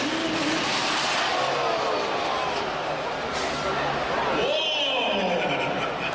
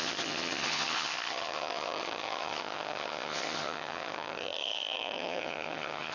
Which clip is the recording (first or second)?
first